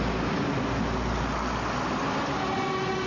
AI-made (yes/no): no